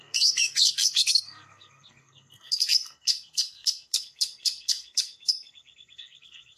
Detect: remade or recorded remade